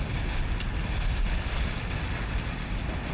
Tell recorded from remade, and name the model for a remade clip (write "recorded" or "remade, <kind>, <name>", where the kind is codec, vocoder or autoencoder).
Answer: recorded